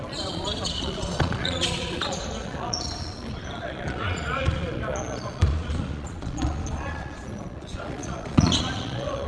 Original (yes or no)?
no